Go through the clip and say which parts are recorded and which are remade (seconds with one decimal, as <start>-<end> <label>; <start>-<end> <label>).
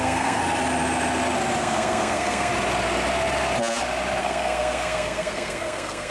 0.0-0.4 remade; 0.4-1.6 recorded; 1.6-2.5 remade; 2.5-4.2 recorded; 4.2-6.1 remade